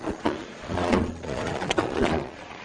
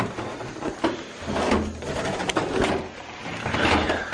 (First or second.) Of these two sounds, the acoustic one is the second